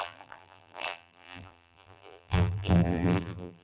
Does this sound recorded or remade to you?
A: remade